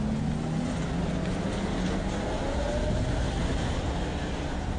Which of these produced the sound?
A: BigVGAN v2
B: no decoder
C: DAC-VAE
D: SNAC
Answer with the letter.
B